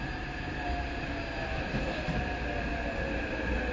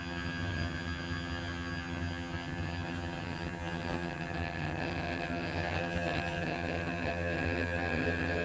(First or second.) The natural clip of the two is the first